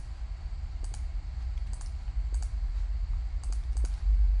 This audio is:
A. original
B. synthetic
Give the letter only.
A